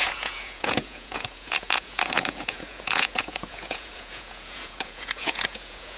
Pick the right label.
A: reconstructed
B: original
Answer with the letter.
A